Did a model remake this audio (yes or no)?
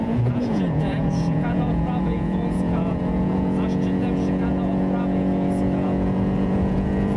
yes